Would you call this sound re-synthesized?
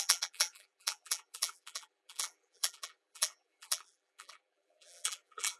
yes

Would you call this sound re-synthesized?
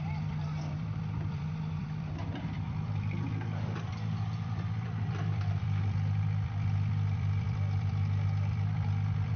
yes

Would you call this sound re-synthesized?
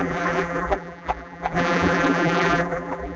yes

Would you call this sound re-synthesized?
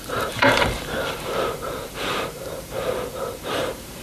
yes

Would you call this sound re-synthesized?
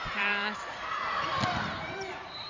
yes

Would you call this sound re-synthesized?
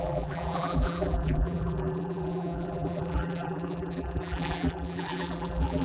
yes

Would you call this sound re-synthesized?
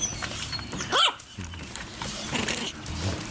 yes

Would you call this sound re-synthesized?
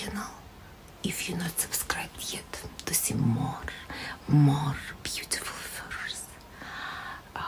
no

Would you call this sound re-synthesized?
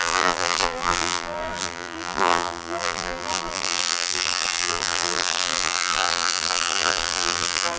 yes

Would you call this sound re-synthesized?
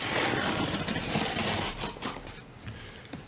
yes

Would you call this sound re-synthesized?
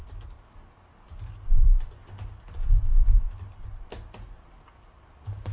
no